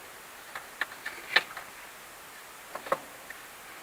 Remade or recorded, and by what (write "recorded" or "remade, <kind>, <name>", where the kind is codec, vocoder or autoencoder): recorded